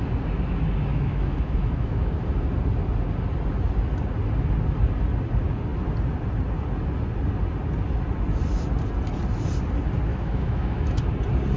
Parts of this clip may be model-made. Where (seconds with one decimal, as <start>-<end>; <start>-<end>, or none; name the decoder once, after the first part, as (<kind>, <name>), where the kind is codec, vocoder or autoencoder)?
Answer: 0.9-2.1 (autoencoder, DAC-VAE); 10.1-11.0